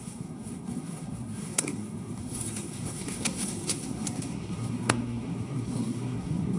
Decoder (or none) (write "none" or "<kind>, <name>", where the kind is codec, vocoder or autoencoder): codec, SNAC